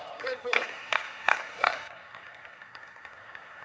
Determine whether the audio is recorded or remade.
remade